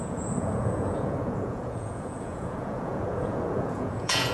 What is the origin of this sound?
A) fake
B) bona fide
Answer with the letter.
A